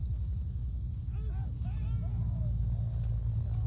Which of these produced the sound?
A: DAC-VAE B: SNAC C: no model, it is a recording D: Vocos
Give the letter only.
C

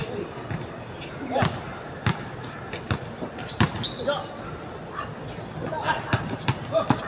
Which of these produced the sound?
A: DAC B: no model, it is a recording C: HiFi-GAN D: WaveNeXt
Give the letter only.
B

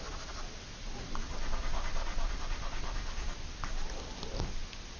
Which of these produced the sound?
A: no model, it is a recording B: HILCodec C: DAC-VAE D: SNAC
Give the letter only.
A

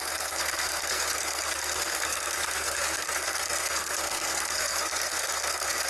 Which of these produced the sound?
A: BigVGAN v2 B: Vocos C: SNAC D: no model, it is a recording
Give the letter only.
C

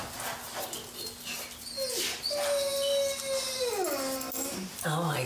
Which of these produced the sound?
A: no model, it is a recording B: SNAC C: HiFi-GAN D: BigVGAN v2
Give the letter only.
A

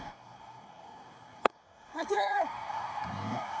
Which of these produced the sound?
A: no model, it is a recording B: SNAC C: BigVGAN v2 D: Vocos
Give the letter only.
B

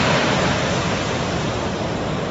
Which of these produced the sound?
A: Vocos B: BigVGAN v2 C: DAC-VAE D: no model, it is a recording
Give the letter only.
B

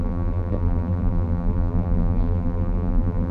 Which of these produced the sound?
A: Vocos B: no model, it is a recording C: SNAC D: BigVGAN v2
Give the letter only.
D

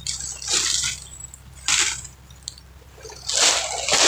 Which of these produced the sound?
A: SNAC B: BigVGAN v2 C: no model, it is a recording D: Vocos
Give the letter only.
C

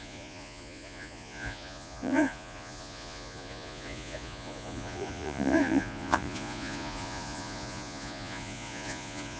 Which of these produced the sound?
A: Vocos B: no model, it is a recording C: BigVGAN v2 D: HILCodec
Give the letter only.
A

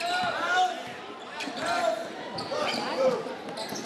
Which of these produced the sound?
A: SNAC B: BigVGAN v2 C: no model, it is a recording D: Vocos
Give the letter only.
B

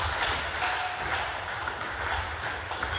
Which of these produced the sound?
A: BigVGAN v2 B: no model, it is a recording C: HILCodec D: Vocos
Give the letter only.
B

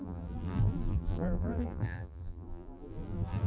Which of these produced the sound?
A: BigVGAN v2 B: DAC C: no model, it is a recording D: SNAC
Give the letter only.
A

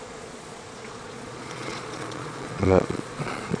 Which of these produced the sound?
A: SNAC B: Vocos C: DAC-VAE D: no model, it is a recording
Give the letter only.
B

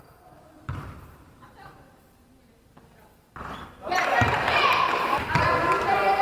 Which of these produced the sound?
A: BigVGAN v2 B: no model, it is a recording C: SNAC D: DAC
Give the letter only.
A